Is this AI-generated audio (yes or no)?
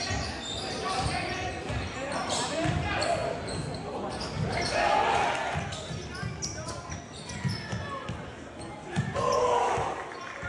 no